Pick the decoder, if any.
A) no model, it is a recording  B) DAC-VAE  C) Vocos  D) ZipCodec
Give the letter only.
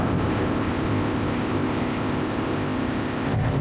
D